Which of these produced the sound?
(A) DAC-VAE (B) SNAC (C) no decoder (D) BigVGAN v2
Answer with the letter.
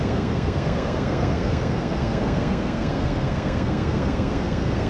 B